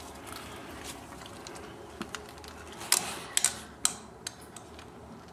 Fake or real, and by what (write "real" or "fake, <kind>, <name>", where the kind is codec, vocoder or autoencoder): real